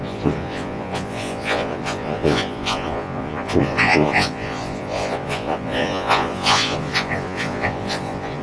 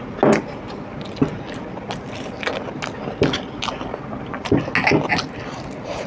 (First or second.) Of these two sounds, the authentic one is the second